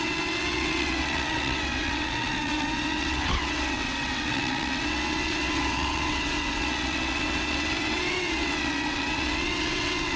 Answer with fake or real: fake